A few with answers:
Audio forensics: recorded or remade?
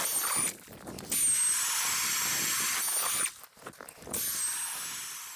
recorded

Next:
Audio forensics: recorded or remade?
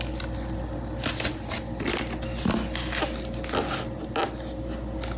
recorded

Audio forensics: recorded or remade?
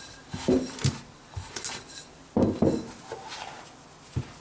recorded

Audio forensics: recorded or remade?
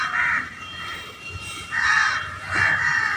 remade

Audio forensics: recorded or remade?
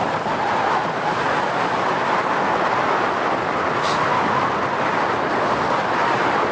recorded